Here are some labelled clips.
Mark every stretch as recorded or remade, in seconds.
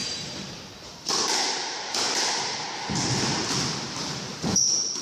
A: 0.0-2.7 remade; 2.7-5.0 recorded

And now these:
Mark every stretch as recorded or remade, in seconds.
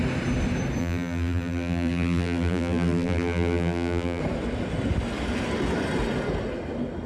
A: 0.0-0.8 recorded; 0.8-4.2 remade; 4.2-7.1 recorded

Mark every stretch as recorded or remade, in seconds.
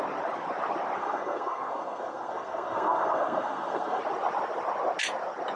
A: 0.0-1.0 recorded; 1.0-4.0 remade; 4.0-5.6 recorded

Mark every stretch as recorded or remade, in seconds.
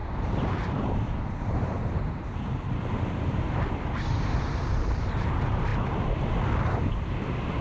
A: 0.0-5.7 remade; 5.7-7.6 recorded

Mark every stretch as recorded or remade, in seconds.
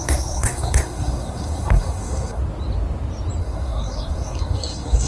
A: 0.0-2.4 remade; 2.4-3.4 recorded; 3.4-5.1 remade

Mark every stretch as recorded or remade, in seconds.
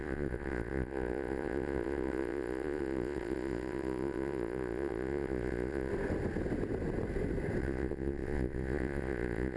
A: 0.0-5.9 remade; 5.9-7.6 recorded; 7.6-9.6 remade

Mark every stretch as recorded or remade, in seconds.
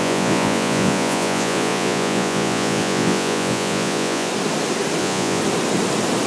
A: 0.0-4.3 remade; 4.3-5.0 recorded; 5.0-5.4 remade; 5.4-6.3 recorded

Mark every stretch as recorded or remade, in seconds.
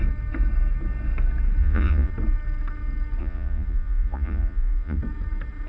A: 0.0-1.6 recorded; 1.6-2.1 remade; 2.1-3.2 recorded; 3.2-5.0 remade; 5.0-5.7 recorded